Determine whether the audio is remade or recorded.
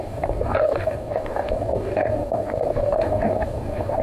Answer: remade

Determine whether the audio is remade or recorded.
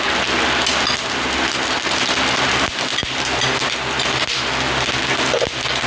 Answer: recorded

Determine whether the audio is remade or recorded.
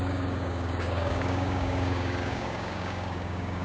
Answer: remade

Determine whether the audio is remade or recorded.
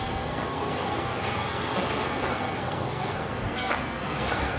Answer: remade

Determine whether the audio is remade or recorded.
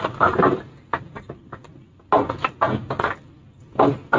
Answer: recorded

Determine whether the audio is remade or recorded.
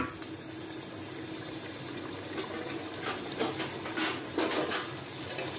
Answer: recorded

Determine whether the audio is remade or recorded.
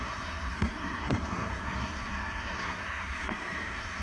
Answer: remade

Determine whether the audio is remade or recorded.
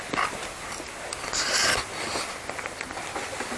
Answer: recorded